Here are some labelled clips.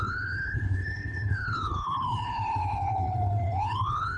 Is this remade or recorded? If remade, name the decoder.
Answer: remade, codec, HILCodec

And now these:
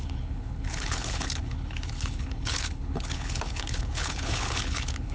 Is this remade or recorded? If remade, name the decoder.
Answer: remade, codec, HILCodec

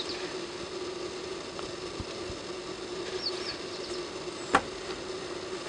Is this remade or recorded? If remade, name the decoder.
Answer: recorded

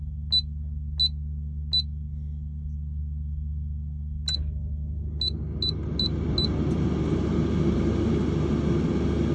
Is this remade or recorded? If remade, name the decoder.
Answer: recorded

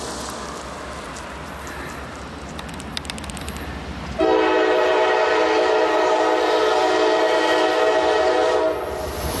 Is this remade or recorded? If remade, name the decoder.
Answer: recorded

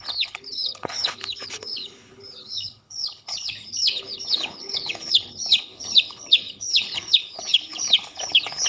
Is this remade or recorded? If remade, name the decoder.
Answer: remade, codec, HILCodec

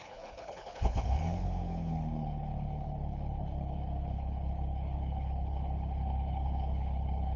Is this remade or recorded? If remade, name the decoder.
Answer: remade, codec, HILCodec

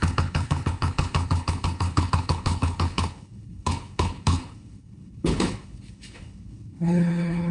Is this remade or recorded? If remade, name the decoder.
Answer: remade, codec, HILCodec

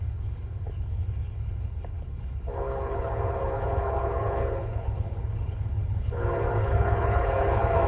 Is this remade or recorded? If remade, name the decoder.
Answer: remade, codec, HILCodec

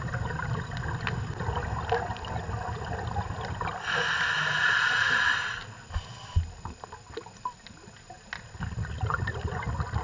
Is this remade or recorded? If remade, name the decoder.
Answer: recorded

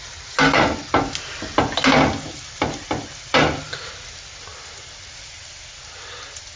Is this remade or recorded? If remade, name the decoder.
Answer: recorded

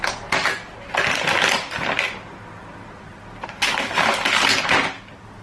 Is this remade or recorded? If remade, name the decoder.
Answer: recorded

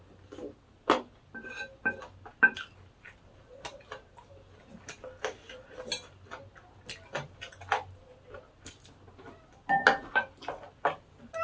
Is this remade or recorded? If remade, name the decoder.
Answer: recorded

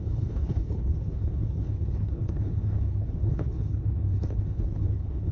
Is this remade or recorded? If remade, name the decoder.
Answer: remade, codec, HILCodec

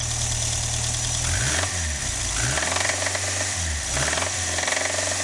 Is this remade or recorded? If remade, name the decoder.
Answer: recorded